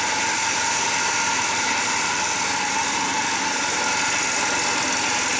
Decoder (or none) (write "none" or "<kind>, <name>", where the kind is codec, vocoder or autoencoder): none